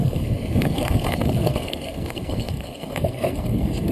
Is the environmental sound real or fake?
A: fake